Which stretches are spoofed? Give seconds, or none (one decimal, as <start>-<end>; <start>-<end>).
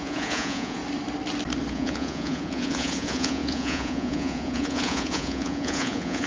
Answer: 0.0-0.8; 1.7-6.3